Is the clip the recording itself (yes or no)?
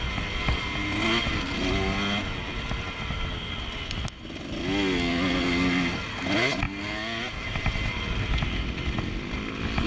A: yes